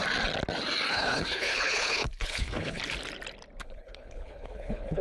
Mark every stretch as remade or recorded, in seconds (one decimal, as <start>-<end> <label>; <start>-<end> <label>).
0.0-0.9 recorded; 0.9-2.8 remade; 2.8-3.6 recorded; 3.6-5.0 remade